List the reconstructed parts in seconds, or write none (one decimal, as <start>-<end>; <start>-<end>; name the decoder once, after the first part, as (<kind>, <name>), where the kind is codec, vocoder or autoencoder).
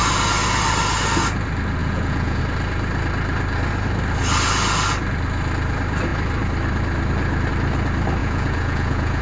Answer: 1.8-2.4 (vocoder, Vocos); 8.2-9.2